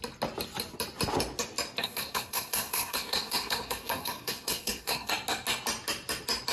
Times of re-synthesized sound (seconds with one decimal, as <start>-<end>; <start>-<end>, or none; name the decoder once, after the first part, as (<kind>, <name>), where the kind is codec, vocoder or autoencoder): 1.8-5.1 (codec, SNAC)